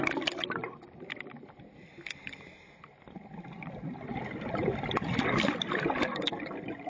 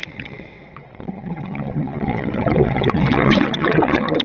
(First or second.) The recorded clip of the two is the first